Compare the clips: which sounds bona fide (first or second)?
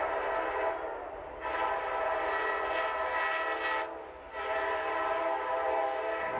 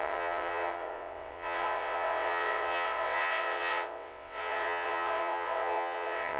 first